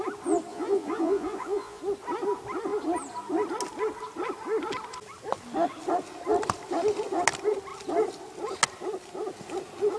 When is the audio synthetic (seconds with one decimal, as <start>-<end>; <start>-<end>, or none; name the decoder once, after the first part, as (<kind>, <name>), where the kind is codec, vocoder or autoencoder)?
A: 0.5-1.8 (vocoder, Vocos)